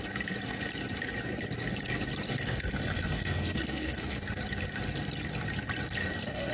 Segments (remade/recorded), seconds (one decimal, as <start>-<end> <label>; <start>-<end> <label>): 0.0-2.3 recorded; 2.3-4.2 remade; 4.2-6.0 recorded; 6.0-6.5 remade